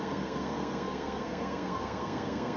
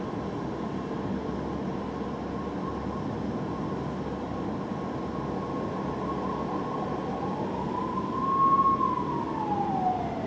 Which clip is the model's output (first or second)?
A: first